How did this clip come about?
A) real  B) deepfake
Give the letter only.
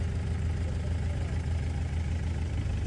A